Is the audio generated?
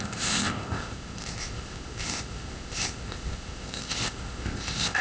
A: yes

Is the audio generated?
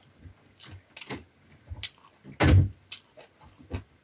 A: no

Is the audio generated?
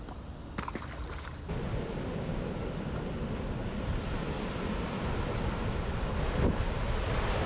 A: no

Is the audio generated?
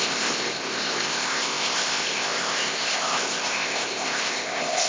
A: yes